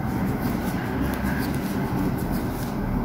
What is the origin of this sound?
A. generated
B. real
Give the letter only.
B